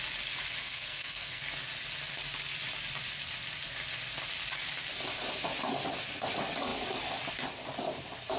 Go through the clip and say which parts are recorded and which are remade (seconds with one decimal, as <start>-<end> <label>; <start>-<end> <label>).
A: 0.0-0.6 recorded; 0.6-1.4 remade; 1.4-8.4 recorded